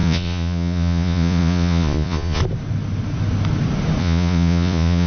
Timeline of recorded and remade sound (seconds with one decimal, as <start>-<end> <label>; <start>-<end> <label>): 0.0-2.4 remade; 2.4-4.0 recorded; 4.0-5.1 remade